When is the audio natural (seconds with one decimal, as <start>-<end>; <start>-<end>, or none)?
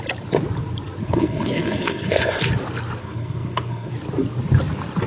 0.0-1.0; 2.4-3.0; 3.9-5.1